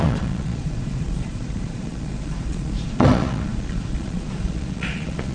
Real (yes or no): no